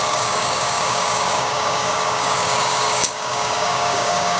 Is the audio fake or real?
fake